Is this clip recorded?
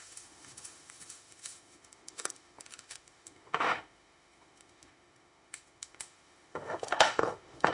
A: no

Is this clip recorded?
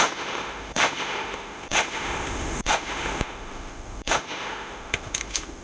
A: no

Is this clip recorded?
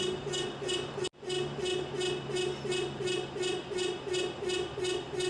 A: yes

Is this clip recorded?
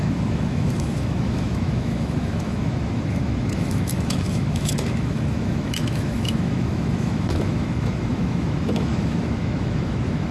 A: no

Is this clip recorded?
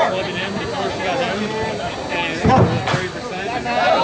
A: yes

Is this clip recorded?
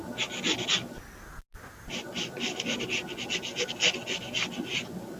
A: yes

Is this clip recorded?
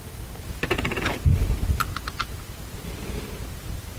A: yes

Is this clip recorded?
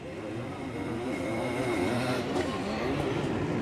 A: yes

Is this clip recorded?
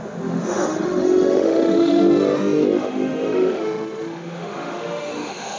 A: no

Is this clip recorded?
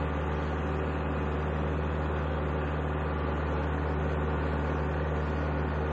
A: yes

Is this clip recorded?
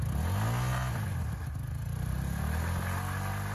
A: yes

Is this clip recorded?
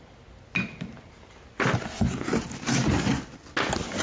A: yes